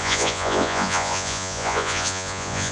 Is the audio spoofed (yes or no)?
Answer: yes